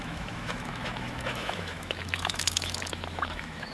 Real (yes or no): no